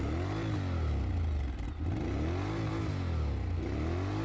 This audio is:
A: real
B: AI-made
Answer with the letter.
A